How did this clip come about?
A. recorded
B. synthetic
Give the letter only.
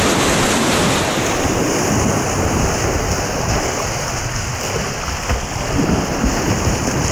A